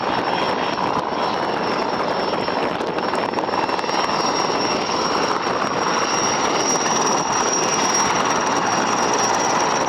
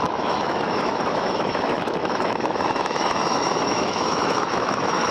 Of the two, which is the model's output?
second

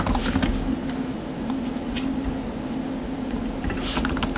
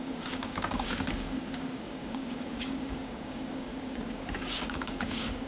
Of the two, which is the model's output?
second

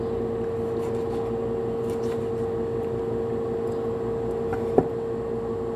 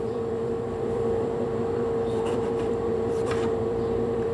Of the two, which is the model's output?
second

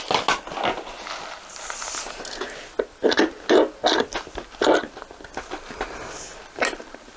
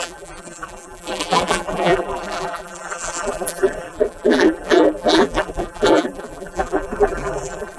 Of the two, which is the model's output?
second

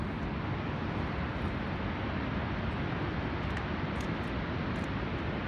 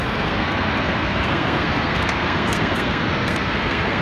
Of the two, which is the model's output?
second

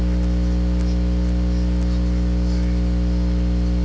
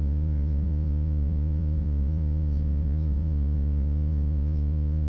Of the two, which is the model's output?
second